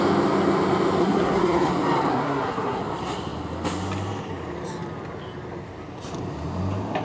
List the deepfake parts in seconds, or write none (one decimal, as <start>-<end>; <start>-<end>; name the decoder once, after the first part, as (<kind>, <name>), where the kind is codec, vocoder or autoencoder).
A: 1.0-1.7 (codec, SNAC); 2.1-2.8